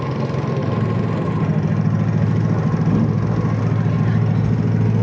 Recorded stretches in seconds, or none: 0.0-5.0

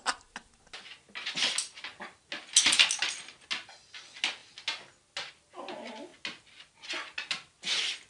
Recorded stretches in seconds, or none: 0.0-8.1

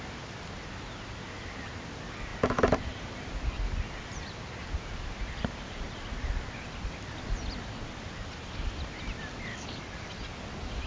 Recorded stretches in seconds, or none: 0.0-9.5; 10.1-10.9